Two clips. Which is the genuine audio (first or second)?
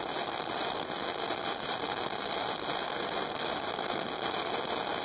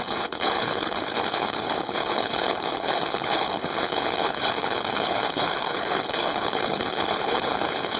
first